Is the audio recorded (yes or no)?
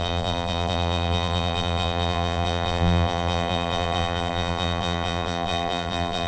no